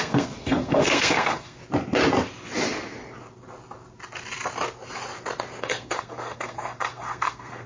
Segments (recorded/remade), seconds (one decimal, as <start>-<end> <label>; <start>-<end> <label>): 0.0-1.6 remade; 1.6-5.6 recorded; 5.6-7.7 remade